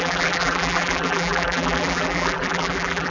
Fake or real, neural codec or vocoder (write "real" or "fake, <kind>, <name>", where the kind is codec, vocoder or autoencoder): fake, vocoder, BigVGAN v2